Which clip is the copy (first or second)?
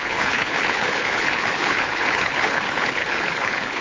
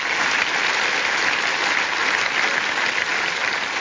first